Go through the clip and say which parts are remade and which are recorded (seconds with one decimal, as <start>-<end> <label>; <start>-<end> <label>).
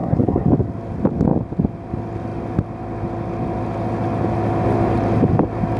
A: 0.0-0.5 remade; 0.5-5.8 recorded